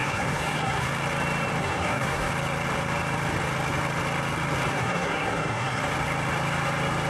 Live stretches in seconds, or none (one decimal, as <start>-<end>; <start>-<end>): 0.9-1.6; 2.3-4.7; 5.8-7.1